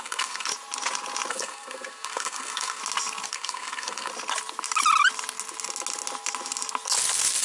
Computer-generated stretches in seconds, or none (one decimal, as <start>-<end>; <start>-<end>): 0.0-0.5; 1.3-2.8; 3.3-4.1